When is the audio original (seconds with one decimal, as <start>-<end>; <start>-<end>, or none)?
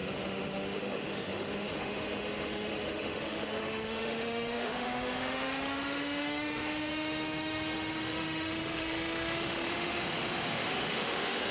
none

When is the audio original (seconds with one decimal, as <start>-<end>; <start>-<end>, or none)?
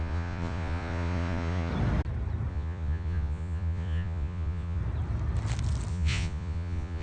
1.7-2.5; 4.8-5.9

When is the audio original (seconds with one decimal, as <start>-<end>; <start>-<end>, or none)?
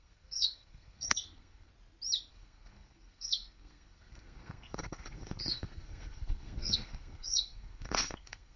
1.7-2.3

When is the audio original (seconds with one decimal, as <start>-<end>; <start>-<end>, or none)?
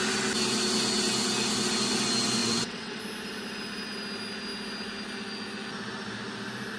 0.0-2.4; 3.0-6.8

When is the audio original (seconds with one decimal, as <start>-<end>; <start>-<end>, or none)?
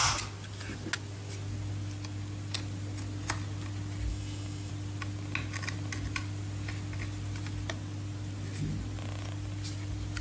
0.0-4.1; 4.7-10.2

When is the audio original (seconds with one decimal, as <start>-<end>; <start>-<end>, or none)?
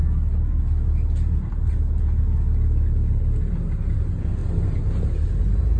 0.0-5.8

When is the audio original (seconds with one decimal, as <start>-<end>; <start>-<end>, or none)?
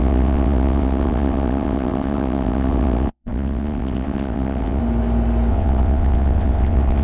4.8-5.5